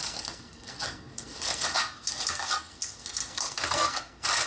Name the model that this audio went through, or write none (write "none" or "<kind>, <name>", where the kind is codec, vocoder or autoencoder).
codec, SNAC